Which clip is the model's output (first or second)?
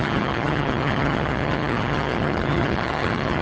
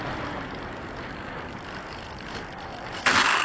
first